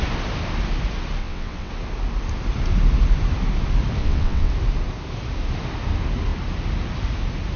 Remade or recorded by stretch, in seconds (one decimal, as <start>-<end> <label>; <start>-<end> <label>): 0.0-1.2 recorded; 1.2-1.7 remade; 1.7-4.0 recorded; 4.0-4.5 remade; 4.5-7.6 recorded